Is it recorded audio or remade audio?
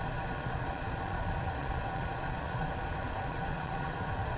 remade